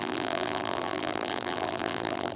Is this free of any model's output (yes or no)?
no